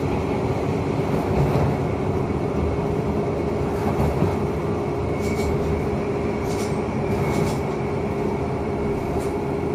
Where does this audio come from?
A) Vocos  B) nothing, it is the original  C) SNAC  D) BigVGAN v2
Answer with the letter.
B